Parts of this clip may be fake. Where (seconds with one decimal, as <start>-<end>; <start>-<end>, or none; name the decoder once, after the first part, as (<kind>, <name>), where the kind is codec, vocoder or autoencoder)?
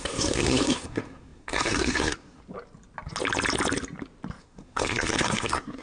0.0-2.4 (codec, SNAC); 4.4-5.8